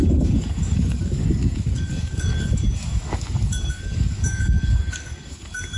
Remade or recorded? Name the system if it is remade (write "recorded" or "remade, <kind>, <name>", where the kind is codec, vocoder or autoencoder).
remade, codec, DAC